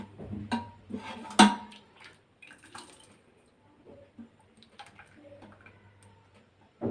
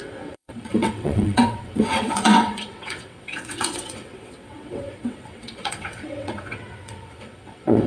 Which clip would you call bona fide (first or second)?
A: first